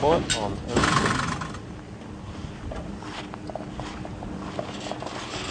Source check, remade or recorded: recorded